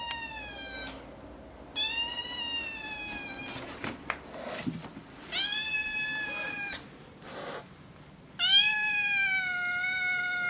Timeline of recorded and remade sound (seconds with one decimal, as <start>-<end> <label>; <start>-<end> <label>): 0.0-10.5 recorded